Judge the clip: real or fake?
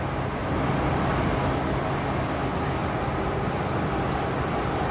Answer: real